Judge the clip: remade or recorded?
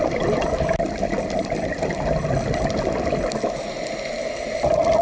recorded